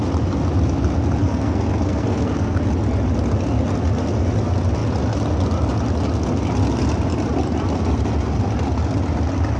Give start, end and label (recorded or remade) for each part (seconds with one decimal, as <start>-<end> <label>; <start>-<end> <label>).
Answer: 0.0-1.2 recorded; 1.2-2.6 remade; 2.6-9.6 recorded